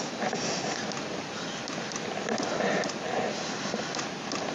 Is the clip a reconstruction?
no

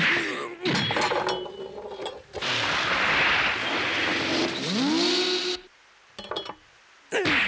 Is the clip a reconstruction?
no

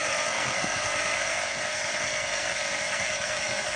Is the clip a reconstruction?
yes